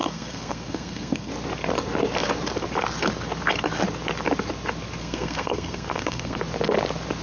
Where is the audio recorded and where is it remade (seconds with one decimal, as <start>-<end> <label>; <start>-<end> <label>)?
0.0-1.3 remade; 1.3-5.0 recorded; 5.0-6.4 remade; 6.4-7.2 recorded